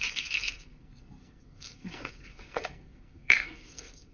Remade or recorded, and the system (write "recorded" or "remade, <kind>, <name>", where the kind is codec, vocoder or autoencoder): remade, codec, SNAC